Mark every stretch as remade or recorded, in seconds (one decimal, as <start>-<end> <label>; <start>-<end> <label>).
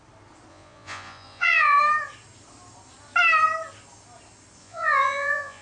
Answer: 0.0-0.5 recorded; 0.5-1.8 remade; 1.8-4.6 recorded; 4.6-5.6 remade